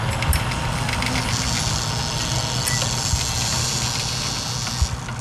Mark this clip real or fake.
real